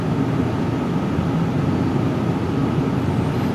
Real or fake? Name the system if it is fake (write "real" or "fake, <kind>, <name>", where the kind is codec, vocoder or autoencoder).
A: real